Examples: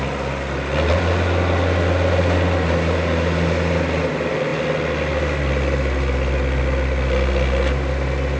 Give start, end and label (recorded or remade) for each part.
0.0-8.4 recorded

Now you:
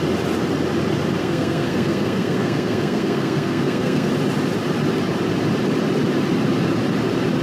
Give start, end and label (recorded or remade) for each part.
0.0-1.2 recorded; 1.2-4.1 remade; 4.1-7.4 recorded

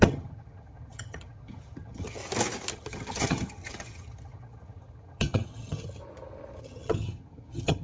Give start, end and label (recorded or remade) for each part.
0.0-2.2 remade; 2.2-2.7 recorded; 2.7-6.0 remade; 6.0-6.6 recorded; 6.6-7.8 remade